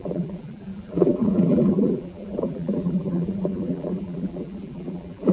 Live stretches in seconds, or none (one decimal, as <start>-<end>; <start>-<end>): none